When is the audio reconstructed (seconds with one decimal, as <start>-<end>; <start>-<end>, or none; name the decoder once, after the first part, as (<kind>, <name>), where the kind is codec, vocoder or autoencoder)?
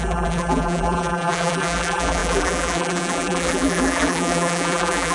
0.0-5.1 (vocoder, BigVGAN v2)